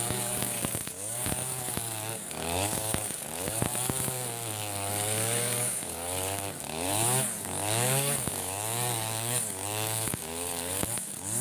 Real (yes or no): no